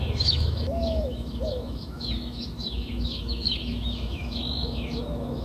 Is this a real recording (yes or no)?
no